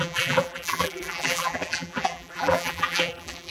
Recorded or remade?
remade